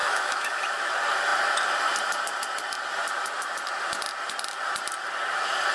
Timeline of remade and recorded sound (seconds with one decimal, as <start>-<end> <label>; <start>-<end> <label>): 0.0-0.9 remade; 0.9-5.7 recorded